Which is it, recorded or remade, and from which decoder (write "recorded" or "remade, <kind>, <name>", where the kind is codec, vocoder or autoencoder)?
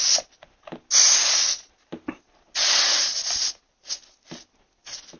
recorded